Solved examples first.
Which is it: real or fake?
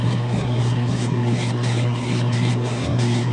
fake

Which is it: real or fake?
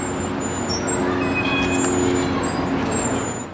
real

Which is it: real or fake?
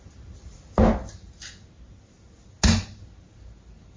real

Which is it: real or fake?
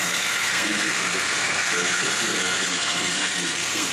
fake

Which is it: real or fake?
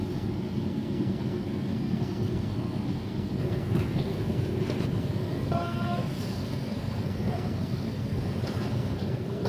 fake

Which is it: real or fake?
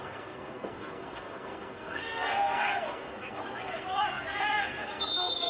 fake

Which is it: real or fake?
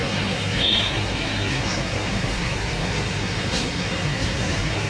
fake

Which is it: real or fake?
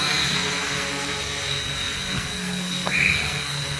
fake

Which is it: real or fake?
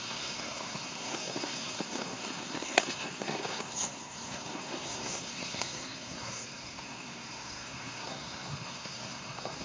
fake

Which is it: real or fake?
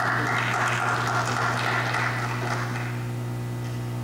real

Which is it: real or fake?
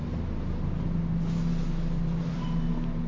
real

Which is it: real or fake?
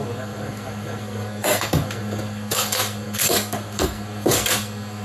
fake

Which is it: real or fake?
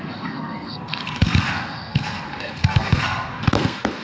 fake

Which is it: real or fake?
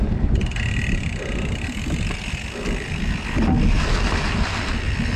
real